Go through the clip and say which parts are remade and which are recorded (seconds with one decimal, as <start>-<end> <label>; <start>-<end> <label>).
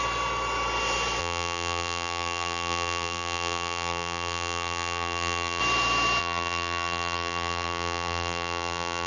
0.0-1.2 recorded; 1.2-5.6 remade; 5.6-6.2 recorded; 6.2-9.1 remade